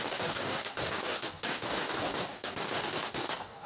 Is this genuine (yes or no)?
no